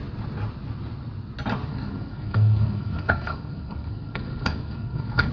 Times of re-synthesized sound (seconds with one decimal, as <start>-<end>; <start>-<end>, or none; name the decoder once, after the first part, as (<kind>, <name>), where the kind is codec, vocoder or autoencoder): 1.7-5.3 (codec, SNAC)